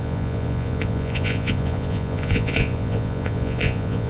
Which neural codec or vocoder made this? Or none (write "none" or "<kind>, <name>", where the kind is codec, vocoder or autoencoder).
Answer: vocoder, Vocos